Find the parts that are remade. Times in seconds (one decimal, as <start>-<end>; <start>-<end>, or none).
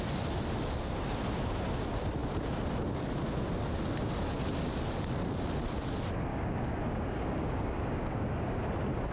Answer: 6.3-8.6